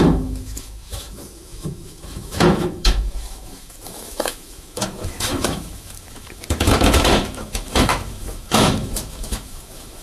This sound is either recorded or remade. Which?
remade